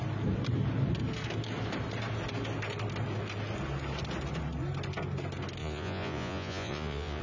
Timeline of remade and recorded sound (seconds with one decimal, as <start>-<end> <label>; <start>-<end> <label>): 0.0-5.6 recorded; 5.6-7.2 remade